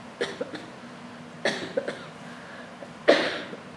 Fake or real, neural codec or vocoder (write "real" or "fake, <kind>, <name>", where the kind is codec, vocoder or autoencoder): real